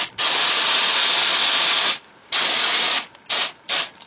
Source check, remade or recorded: recorded